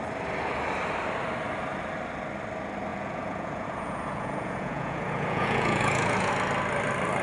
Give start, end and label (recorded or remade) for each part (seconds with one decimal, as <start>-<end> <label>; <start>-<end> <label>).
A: 0.0-2.9 recorded; 2.9-6.3 remade; 6.3-7.2 recorded